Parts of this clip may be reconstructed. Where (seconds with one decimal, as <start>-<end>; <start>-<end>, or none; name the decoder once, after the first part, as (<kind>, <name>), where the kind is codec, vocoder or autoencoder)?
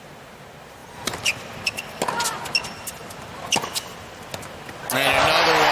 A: none